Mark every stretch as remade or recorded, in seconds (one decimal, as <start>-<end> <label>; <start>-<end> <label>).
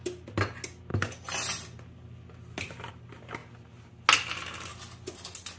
0.0-5.6 recorded